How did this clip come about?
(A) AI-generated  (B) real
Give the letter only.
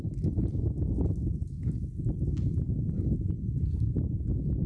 B